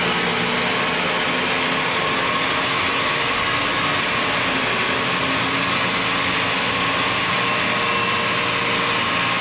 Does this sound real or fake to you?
real